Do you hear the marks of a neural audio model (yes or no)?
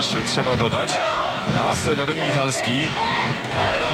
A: yes